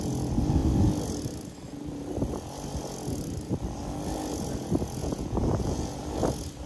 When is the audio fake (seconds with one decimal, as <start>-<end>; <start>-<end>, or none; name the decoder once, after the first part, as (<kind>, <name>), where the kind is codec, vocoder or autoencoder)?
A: 5.0-6.0 (vocoder, Vocos)